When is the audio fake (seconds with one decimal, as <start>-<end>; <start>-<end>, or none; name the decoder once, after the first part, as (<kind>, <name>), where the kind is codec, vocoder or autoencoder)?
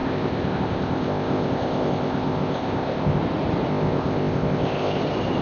0.0-3.2 (codec, ZipCodec); 3.7-5.0